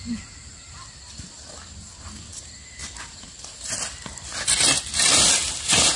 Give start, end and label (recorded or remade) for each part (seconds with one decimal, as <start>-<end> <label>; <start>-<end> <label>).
0.0-6.0 recorded